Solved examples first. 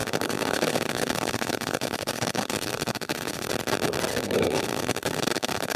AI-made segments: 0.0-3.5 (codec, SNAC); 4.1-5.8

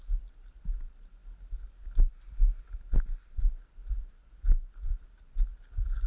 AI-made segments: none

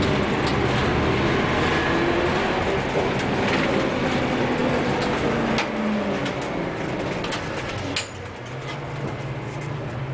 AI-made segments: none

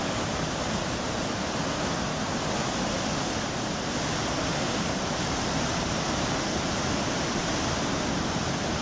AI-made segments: none

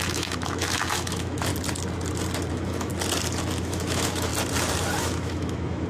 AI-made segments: 0.0-1.5 (autoencoder, DAC-VAE); 2.5-2.9; 3.6-4.3; 5.0-5.9

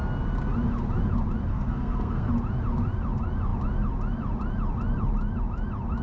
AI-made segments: 1.5-2.3 (codec, SNAC)